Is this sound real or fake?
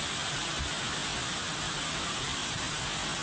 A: real